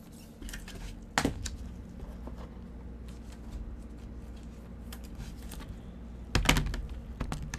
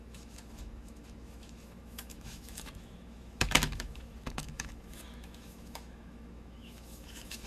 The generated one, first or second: second